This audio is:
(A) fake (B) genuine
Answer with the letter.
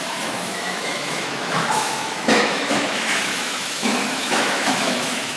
A